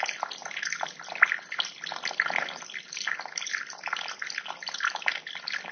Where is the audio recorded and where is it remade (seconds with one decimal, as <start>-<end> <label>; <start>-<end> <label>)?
0.0-5.7 recorded